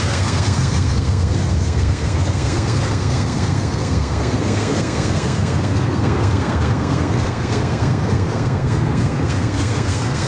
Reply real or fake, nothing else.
fake